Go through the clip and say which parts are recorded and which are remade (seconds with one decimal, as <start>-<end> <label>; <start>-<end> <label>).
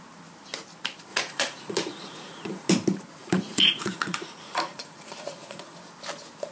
0.0-1.1 recorded; 1.1-2.7 remade; 2.7-3.2 recorded; 3.2-5.8 remade; 5.8-6.5 recorded